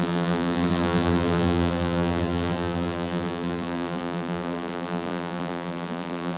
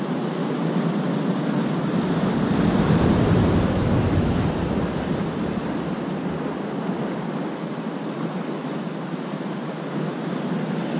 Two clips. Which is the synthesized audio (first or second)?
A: first